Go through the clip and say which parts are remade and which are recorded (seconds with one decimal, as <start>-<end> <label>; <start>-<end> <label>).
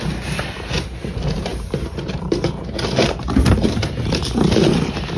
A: 0.0-1.5 recorded; 1.5-2.5 remade; 2.5-5.2 recorded